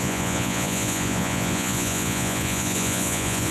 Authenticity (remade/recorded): remade